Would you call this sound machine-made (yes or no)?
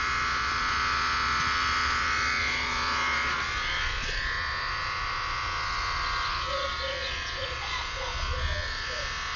yes